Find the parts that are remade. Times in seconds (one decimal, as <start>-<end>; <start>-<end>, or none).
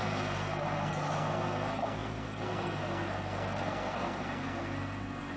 0.0-5.4